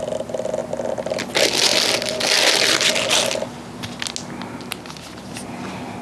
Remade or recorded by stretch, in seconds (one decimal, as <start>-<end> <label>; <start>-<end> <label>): 0.0-0.6 remade; 0.6-1.2 recorded; 1.2-1.7 remade; 1.7-5.3 recorded; 5.3-6.0 remade